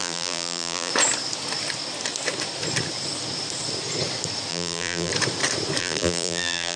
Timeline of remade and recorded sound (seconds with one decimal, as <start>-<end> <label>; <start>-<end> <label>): 0.0-0.9 remade; 0.9-4.5 recorded; 4.5-5.1 remade; 5.1-5.8 recorded; 5.8-6.8 remade